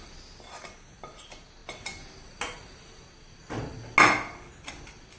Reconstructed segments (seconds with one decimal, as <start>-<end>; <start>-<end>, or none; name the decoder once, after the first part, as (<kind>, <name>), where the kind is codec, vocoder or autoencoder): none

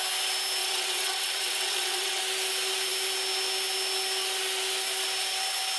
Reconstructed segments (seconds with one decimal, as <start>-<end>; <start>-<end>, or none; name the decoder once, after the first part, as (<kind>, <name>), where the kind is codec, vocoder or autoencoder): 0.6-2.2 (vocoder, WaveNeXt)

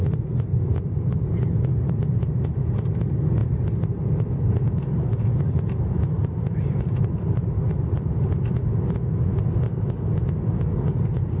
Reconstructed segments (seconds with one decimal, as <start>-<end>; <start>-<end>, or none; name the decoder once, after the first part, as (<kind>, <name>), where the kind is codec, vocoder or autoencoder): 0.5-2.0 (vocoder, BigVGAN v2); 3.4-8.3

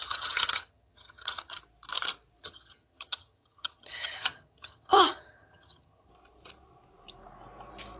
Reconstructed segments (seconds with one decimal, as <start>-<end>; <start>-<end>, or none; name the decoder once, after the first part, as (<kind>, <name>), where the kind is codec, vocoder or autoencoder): 0.0-1.6 (vocoder, HiFi-GAN); 2.4-6.1

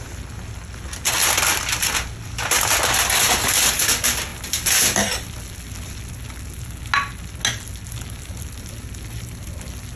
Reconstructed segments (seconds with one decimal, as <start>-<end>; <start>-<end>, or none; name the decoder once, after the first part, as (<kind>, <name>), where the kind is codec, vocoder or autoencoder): none

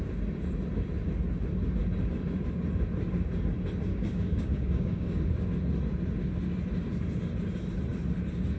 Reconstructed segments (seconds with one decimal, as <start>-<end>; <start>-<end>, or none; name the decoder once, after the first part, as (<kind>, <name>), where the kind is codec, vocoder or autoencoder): 3.9-5.2 (codec, DAC)